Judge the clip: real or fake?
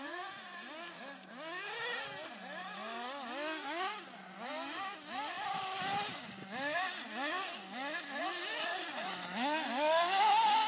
real